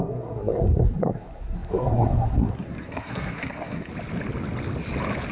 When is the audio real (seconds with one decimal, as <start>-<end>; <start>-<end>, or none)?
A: 3.9-5.3